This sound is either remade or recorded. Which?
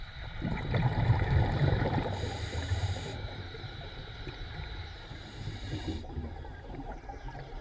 remade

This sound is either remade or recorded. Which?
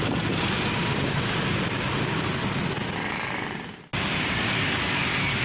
recorded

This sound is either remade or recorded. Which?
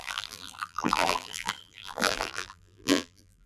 remade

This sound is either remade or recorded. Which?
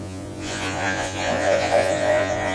remade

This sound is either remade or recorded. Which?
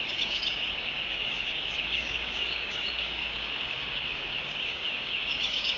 remade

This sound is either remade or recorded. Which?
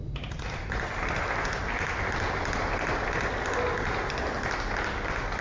recorded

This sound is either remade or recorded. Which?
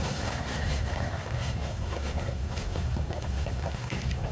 remade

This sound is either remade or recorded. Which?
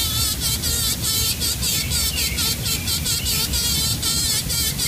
remade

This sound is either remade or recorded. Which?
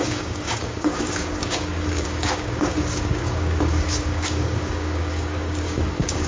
remade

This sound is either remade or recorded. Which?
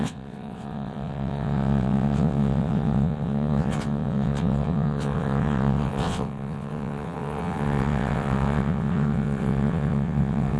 remade